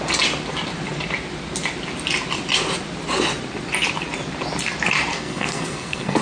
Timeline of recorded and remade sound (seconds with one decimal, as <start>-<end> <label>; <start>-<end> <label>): 0.0-5.1 recorded; 5.1-6.2 remade